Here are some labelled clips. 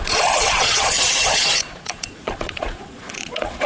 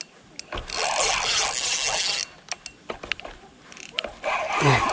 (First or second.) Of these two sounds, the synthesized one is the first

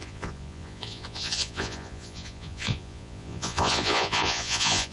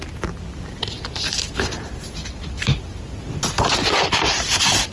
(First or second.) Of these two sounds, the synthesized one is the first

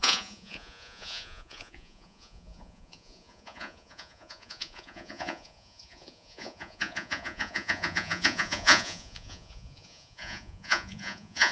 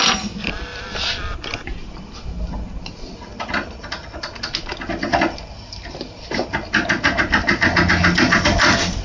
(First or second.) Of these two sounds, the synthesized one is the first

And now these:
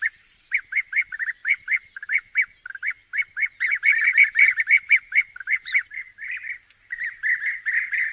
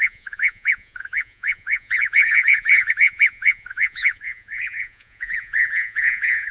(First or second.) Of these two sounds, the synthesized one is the second